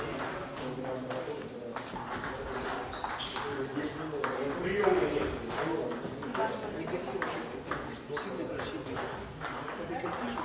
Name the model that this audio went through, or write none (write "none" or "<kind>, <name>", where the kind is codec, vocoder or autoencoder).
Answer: none